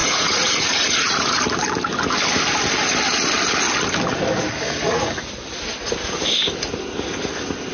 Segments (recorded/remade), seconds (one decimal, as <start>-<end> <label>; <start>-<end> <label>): 0.0-1.4 remade; 1.4-7.7 recorded